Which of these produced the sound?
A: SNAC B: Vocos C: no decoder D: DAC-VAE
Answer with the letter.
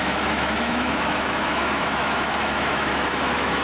D